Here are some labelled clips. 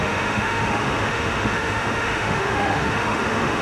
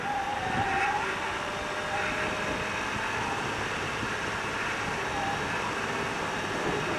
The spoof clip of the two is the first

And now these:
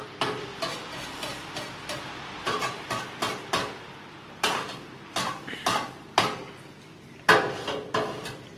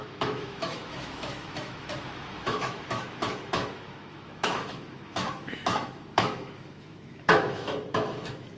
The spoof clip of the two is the second